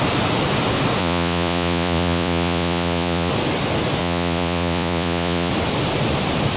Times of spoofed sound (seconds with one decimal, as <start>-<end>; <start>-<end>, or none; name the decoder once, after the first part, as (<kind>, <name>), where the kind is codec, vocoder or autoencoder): 1.0-3.3 (vocoder, Vocos); 4.0-5.5